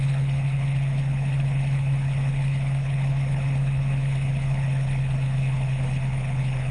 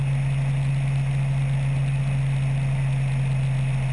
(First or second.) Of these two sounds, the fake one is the first